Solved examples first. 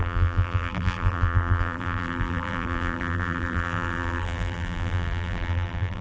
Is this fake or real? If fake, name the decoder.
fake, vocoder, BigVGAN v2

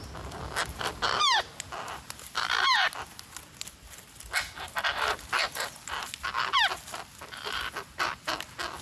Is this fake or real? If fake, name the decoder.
real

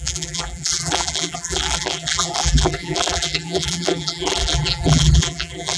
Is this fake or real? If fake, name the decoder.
fake, vocoder, BigVGAN v2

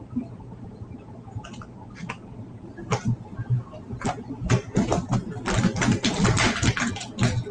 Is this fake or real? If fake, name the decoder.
real